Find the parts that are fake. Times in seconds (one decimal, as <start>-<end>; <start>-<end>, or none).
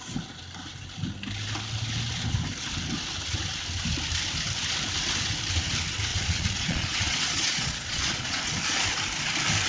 6.1-8.4